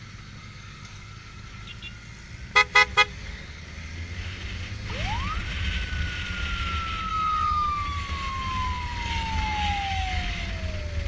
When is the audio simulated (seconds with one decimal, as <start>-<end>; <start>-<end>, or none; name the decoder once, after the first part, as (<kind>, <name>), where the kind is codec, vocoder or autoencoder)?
0.4-1.7 (codec, DAC); 2.9-3.6; 7.1-10.5